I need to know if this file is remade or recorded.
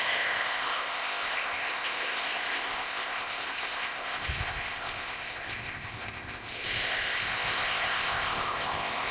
remade